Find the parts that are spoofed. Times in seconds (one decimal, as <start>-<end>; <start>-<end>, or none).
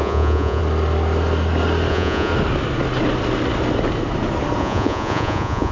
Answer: 0.0-0.6; 1.9-2.3; 4.6-5.7